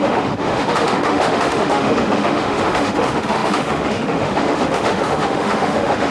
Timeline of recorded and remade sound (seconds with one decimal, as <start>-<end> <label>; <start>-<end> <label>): 0.0-6.1 remade